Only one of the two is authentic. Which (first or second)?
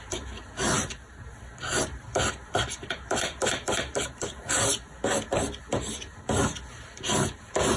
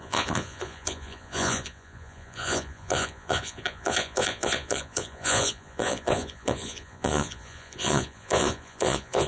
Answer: first